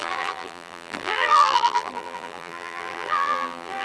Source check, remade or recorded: remade